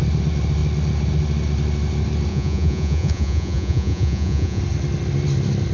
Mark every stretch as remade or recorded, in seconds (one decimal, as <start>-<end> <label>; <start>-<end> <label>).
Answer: 0.0-2.3 recorded; 2.3-4.6 remade; 4.6-5.7 recorded